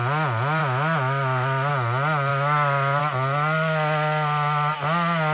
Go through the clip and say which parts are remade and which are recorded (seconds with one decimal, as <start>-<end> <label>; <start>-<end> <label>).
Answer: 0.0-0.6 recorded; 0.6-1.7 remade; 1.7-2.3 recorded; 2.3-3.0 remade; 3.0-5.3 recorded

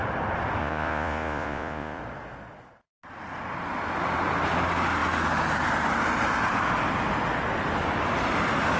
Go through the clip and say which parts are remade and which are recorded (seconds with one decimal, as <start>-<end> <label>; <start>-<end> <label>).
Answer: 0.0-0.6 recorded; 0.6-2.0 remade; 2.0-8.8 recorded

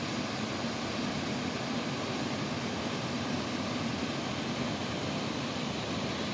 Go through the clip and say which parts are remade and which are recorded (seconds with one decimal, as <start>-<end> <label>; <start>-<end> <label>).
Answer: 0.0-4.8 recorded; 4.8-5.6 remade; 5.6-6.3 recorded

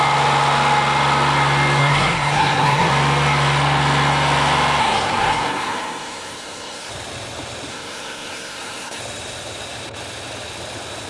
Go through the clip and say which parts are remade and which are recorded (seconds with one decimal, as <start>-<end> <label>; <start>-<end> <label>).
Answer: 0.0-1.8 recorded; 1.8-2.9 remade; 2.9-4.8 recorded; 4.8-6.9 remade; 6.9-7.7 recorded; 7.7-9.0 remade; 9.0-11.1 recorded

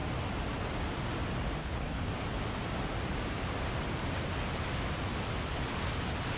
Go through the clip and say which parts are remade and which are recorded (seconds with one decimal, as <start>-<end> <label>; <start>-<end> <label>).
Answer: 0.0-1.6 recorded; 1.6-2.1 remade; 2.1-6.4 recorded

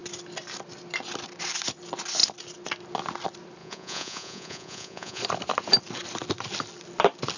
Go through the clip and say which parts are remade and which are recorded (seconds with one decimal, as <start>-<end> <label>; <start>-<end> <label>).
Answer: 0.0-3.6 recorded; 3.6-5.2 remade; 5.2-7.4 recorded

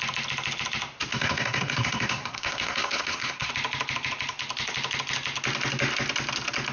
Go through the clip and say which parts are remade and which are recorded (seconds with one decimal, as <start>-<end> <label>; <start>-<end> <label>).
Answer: 0.0-1.1 recorded; 1.1-3.5 remade; 3.5-6.7 recorded